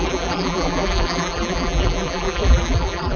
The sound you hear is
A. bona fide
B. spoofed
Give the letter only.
B